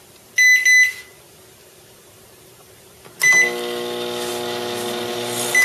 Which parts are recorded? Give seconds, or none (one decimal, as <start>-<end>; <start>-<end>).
0.0-5.6